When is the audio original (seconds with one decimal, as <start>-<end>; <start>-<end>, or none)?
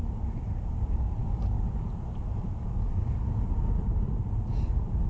0.0-5.1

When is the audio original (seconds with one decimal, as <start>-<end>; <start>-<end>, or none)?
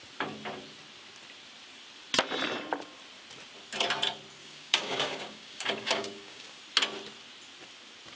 0.0-4.4; 6.6-8.2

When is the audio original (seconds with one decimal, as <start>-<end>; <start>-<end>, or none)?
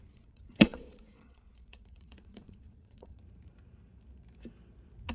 3.2-5.1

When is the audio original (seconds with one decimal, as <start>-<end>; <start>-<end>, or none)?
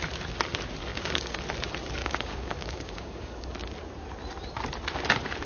0.0-0.9; 1.4-2.0; 3.5-5.5